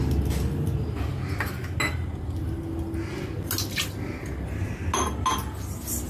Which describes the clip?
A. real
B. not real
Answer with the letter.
A